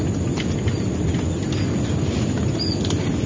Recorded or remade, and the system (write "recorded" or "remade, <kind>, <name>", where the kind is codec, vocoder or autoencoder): recorded